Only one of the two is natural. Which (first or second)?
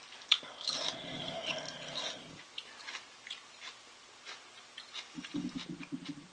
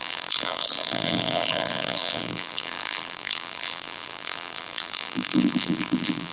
first